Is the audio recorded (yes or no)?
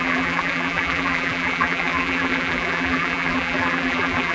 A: no